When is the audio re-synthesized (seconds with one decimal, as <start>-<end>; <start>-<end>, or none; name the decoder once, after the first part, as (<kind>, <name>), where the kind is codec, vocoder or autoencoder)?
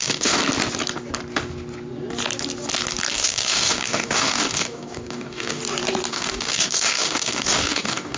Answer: 0.0-0.4 (codec, DAC); 3.1-5.6; 6.1-8.2